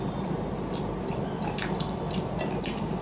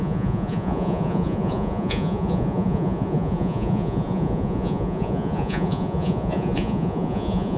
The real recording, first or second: first